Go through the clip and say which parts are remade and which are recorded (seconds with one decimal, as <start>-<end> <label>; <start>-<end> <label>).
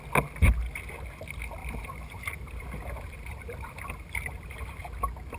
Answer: 0.0-1.6 recorded; 1.6-4.8 remade; 4.8-5.4 recorded